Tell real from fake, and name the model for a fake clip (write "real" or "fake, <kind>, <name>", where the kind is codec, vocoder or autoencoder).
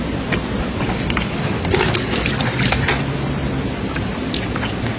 real